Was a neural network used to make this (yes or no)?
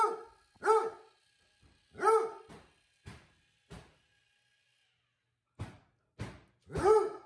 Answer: no